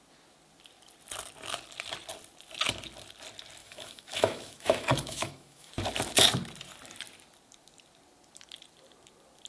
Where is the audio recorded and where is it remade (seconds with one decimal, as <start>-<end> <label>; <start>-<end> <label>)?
0.0-3.6 recorded; 3.6-5.7 remade; 5.7-9.5 recorded